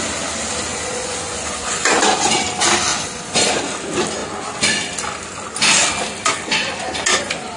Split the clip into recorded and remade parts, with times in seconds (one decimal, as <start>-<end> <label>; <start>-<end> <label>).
0.0-0.7 recorded; 0.7-2.0 remade; 2.0-2.9 recorded; 2.9-3.6 remade; 3.6-7.6 recorded